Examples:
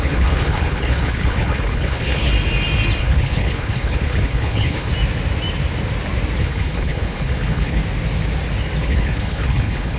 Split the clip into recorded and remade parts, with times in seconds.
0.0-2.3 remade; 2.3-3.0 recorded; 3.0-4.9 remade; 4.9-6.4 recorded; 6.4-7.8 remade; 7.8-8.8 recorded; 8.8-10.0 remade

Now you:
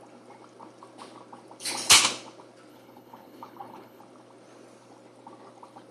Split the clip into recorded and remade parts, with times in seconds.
0.0-2.7 recorded; 2.7-4.0 remade; 4.0-5.9 recorded

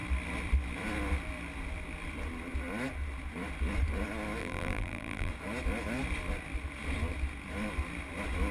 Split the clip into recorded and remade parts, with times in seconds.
0.0-4.4 recorded; 4.4-5.3 remade; 5.3-8.5 recorded

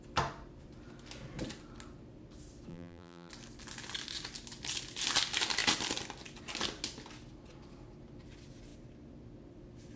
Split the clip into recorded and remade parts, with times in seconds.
0.0-2.7 recorded; 2.7-3.3 remade; 3.3-10.0 recorded

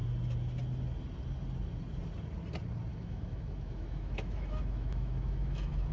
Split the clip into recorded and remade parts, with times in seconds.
0.0-2.9 recorded; 2.9-5.9 remade

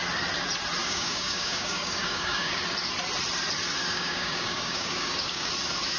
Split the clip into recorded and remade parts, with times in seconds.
0.0-0.8 recorded; 0.8-2.6 remade; 2.6-3.8 recorded; 3.8-5.5 remade; 5.5-6.0 recorded

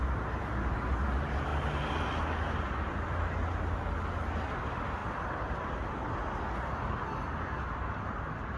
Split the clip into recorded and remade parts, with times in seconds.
0.0-8.6 recorded

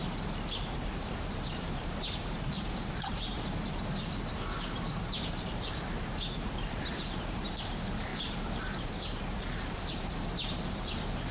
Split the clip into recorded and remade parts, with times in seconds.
0.0-1.0 recorded; 1.0-11.3 remade